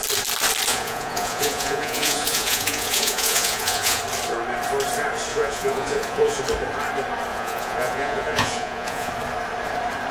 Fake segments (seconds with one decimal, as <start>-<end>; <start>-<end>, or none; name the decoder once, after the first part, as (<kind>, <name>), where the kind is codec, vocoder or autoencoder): 0.7-4.0 (vocoder, Vocos); 5.3-6.4; 7.3-9.1